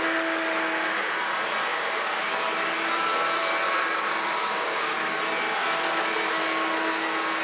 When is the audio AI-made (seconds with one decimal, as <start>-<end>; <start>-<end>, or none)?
1.7-2.2; 4.4-5.2